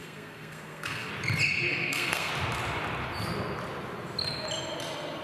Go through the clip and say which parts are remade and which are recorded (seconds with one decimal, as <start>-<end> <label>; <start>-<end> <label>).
0.0-1.1 remade; 1.1-1.7 recorded; 1.7-2.3 remade; 2.3-5.2 recorded

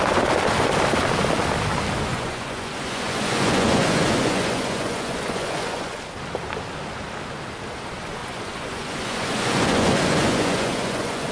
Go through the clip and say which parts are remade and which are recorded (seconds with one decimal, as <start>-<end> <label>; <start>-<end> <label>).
0.0-2.1 recorded; 2.1-6.0 remade; 6.0-8.2 recorded; 8.2-11.3 remade